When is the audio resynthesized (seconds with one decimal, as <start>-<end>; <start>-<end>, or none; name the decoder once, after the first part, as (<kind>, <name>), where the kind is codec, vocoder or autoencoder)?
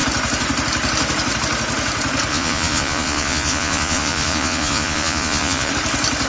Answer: 2.3-5.7 (vocoder, Vocos)